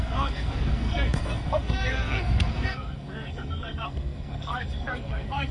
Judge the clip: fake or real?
fake